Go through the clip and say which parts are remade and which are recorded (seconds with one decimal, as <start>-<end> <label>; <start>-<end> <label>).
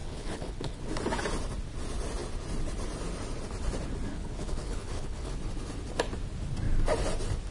0.0-0.8 remade; 0.8-4.1 recorded; 4.1-5.3 remade; 5.3-7.5 recorded